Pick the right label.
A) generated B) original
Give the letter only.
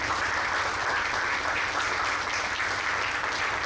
B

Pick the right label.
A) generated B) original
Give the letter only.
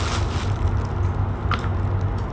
B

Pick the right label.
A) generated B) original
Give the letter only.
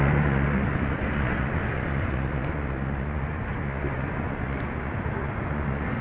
A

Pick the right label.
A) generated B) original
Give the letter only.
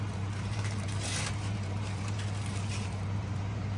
A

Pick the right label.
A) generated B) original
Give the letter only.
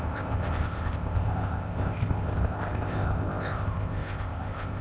A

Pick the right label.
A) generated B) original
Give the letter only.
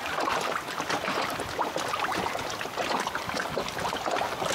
B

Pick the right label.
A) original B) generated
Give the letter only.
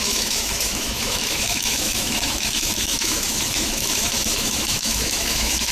B